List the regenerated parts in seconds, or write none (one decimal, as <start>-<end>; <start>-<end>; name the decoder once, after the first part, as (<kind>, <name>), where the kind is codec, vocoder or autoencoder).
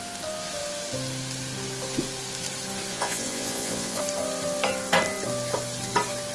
2.9-4.0 (vocoder, Vocos)